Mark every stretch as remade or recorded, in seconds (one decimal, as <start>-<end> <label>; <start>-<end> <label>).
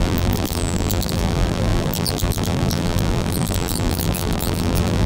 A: 0.0-5.1 remade